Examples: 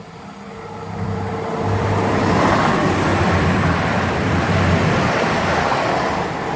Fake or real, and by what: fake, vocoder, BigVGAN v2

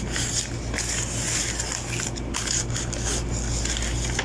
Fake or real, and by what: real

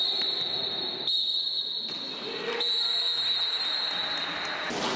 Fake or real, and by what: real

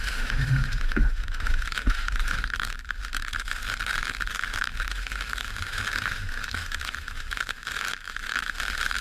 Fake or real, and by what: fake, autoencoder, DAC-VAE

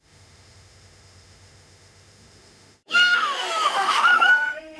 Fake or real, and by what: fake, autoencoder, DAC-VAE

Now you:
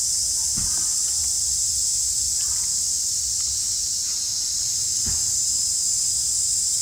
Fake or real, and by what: fake, vocoder, BigVGAN v2